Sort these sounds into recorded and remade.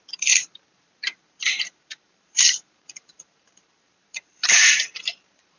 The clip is remade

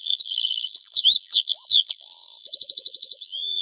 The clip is remade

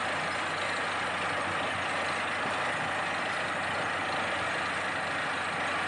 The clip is recorded